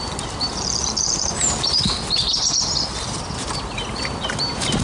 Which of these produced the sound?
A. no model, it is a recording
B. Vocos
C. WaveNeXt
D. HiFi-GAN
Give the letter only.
A